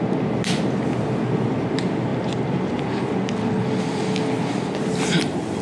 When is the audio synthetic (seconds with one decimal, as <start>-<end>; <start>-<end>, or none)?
none